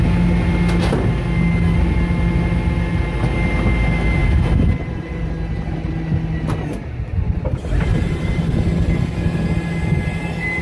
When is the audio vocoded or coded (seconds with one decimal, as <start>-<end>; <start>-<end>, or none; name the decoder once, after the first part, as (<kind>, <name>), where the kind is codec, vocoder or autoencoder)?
4.2-5.3 (vocoder, BigVGAN v2); 7.9-8.4